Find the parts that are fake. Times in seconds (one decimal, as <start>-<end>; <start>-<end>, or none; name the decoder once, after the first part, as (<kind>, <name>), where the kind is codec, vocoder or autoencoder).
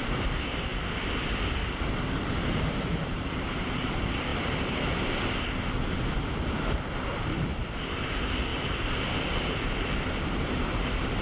0.0-0.7 (vocoder, BigVGAN v2); 2.1-4.3; 7.8-8.5; 9.4-11.2